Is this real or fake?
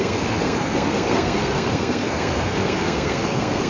fake